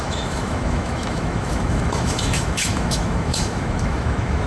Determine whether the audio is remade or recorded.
remade